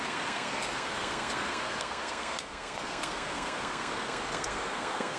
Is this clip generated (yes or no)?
yes